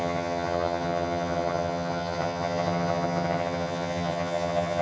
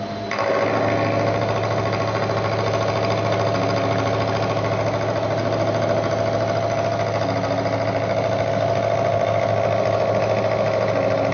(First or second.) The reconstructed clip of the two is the first